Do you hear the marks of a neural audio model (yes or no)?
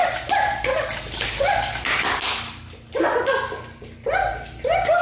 no